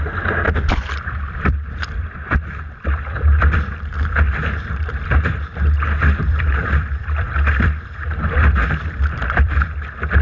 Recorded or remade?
remade